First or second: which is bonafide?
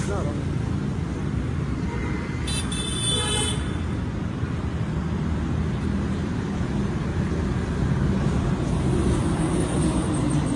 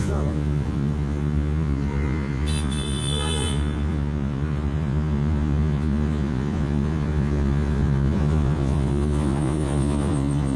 first